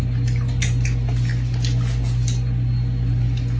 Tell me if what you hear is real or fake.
real